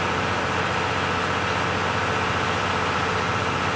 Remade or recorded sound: recorded